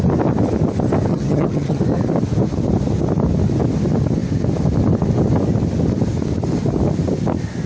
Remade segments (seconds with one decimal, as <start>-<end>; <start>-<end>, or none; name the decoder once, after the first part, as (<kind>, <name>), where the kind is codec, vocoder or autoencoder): 1.1-1.8 (vocoder, HiFi-GAN)